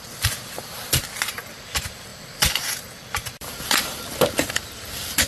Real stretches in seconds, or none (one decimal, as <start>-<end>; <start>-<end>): 0.0-2.1; 4.5-5.3